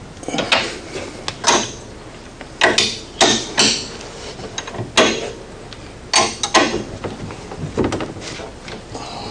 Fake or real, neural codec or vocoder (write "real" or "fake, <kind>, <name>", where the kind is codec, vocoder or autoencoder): real